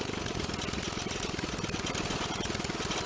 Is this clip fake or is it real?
real